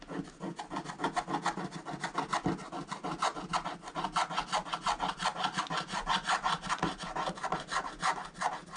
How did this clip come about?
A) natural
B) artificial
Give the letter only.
A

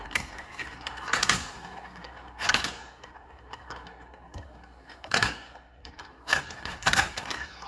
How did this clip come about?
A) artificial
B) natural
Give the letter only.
A